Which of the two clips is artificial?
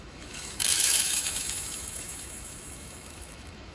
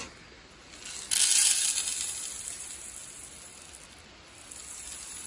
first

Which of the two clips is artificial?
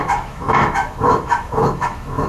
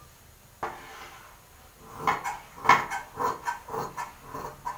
first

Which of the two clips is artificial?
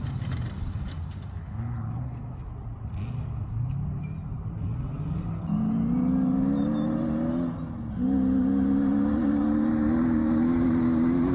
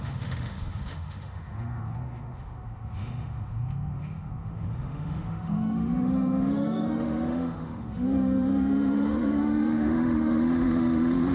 second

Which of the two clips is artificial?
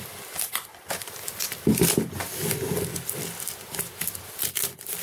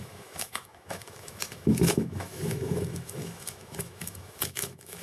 second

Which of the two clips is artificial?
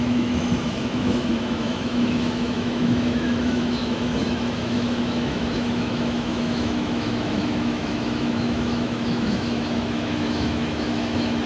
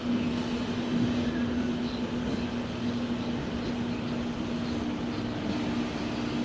first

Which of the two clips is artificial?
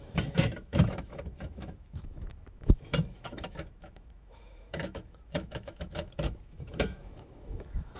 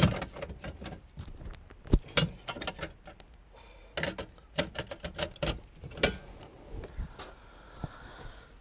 first